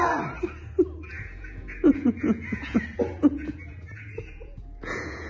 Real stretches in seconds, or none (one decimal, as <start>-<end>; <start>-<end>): 0.0-1.1; 2.8-3.2